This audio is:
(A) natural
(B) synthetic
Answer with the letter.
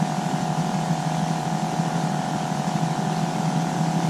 A